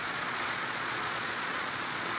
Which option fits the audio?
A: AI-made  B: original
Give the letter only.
A